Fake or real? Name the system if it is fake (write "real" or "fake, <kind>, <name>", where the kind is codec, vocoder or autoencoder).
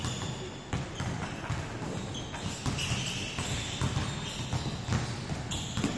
real